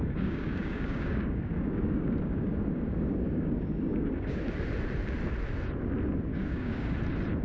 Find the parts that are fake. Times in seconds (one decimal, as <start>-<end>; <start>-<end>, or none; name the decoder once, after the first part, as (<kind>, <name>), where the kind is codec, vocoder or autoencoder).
0.0-4.4 (codec, DAC); 6.3-6.9